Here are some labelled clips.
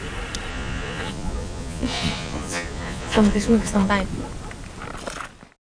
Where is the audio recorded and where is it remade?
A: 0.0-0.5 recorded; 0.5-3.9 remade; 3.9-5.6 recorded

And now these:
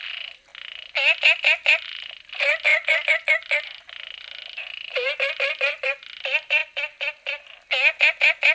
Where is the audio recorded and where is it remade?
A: 0.0-8.5 recorded

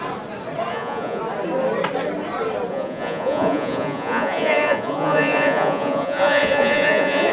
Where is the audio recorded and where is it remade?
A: 0.0-0.7 recorded; 0.7-1.2 remade; 1.2-2.7 recorded; 2.7-7.3 remade

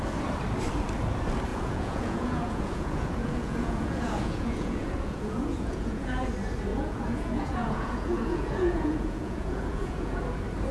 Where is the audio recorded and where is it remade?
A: 0.0-1.5 recorded; 1.5-6.3 remade; 6.3-6.7 recorded; 6.7-10.2 remade; 10.2-10.7 recorded

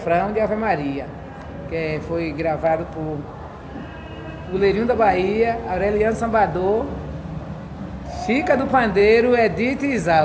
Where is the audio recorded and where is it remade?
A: 0.0-10.2 recorded

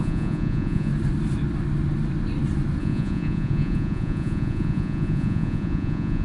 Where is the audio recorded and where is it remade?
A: 0.0-0.9 remade; 0.9-2.8 recorded; 2.8-6.2 remade

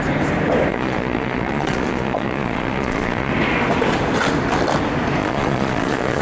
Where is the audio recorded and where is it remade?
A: 0.0-0.7 recorded; 0.7-3.3 remade; 3.3-5.2 recorded; 5.2-6.2 remade